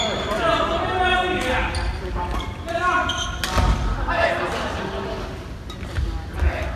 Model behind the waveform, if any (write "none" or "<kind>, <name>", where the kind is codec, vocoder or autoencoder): none